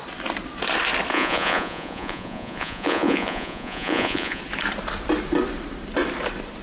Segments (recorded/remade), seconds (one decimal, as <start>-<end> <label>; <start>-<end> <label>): 0.0-1.1 recorded; 1.1-4.4 remade; 4.4-6.6 recorded